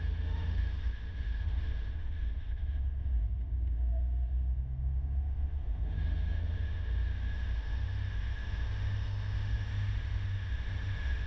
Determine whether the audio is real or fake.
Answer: fake